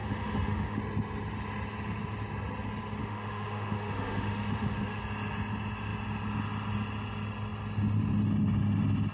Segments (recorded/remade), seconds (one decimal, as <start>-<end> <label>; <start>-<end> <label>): 0.0-0.8 remade; 0.8-3.0 recorded; 3.0-5.0 remade; 5.0-9.1 recorded